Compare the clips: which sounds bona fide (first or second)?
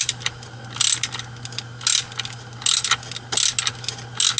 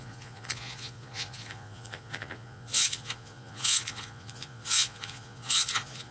first